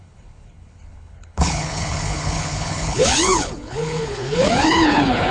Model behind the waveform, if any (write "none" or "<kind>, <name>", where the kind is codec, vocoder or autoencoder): codec, HILCodec